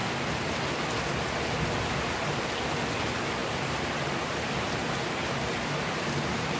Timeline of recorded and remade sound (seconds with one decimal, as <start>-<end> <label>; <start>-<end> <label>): 0.0-3.4 recorded; 3.4-6.6 remade